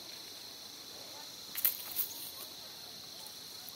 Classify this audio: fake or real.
real